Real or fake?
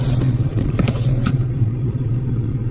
fake